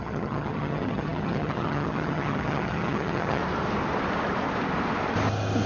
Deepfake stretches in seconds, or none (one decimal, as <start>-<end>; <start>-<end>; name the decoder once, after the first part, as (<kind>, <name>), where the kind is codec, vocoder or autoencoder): 0.0-3.4 (vocoder, HiFi-GAN)